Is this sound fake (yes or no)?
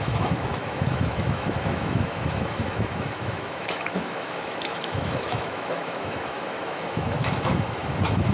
yes